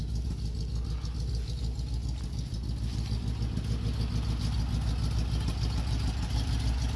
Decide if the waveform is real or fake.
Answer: real